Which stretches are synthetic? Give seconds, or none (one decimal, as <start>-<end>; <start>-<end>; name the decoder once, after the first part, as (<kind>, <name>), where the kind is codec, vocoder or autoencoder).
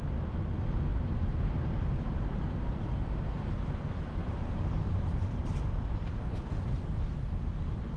0.9-3.8 (vocoder, BigVGAN v2); 4.2-6.5